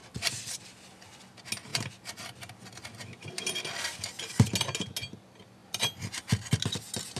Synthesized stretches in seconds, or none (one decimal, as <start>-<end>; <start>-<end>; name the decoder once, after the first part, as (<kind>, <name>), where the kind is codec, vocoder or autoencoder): 0.0-0.7 (vocoder, BigVGAN v2); 1.7-4.2; 5.6-6.2